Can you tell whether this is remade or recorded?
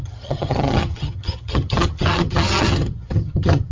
remade